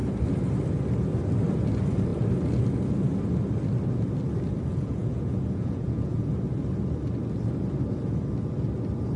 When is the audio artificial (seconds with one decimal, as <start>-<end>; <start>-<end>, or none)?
4.7-6.3